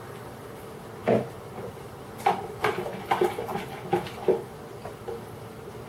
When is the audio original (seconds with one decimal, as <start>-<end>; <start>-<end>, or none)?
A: 0.0-1.0; 1.7-3.5; 4.6-5.9